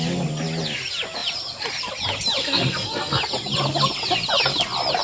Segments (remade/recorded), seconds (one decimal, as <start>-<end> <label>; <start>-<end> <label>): 0.0-2.4 recorded; 2.4-3.2 remade; 3.2-5.0 recorded